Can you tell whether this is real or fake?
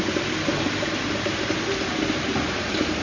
real